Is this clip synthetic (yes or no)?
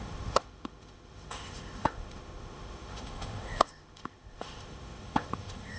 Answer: yes